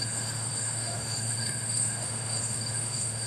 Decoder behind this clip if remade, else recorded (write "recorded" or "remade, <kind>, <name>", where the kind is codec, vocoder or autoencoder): remade, autoencoder, DAC-VAE